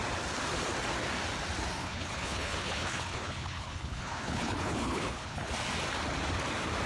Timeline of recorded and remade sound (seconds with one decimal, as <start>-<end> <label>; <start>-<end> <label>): 0.0-1.8 recorded; 1.8-5.5 remade; 5.5-6.9 recorded